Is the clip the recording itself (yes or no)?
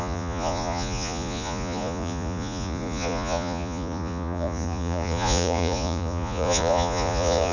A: no